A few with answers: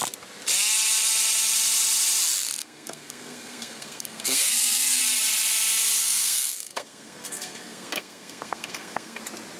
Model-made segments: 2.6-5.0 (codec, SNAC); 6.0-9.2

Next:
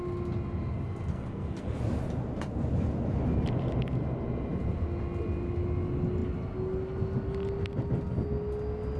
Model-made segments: 1.1-1.8 (codec, SNAC)

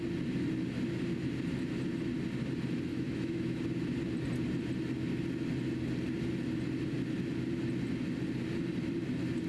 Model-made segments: 2.9-3.6 (autoencoder, DAC-VAE)

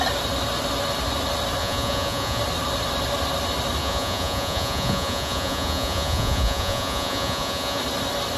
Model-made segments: 1.6-2.4 (vocoder, Vocos); 3.8-7.8

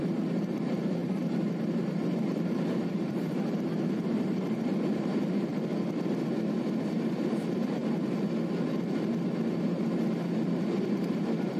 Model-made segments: 0.0-5.5 (vocoder, BigVGAN v2); 7.1-7.8; 11.0-11.6

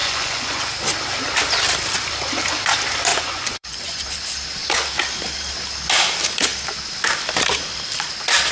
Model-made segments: 0.0-0.7 (vocoder, Vocos); 3.1-4.1

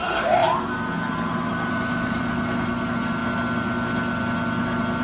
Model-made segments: 0.4-2.2 (vocoder, BigVGAN v2)